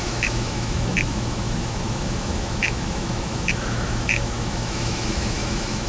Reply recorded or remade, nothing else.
remade